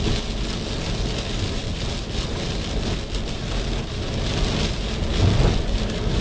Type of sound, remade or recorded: recorded